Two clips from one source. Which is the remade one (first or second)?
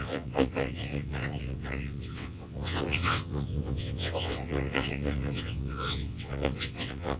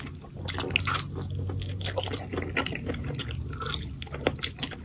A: first